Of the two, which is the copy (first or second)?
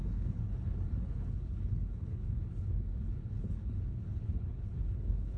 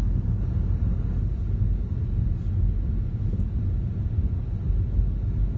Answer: first